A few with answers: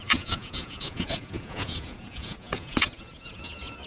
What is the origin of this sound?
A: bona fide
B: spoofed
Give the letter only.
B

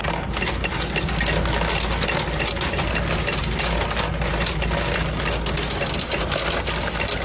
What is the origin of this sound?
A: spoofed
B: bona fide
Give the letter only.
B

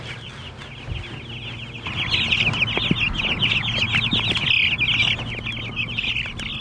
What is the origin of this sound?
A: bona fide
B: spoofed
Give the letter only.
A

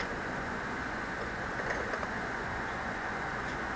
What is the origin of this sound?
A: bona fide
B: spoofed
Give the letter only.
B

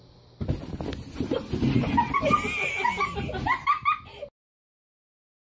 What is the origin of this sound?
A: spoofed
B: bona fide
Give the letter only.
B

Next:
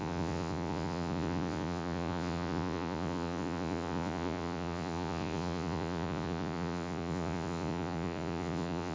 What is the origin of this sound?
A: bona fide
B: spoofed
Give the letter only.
B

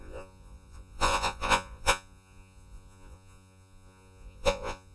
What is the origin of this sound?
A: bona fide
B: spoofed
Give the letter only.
B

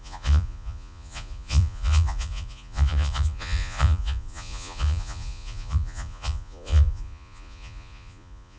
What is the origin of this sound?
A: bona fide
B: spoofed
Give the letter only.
B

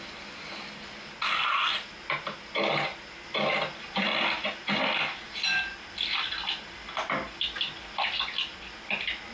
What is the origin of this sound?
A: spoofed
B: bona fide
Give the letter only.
B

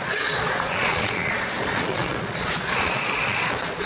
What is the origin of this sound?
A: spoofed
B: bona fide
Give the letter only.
A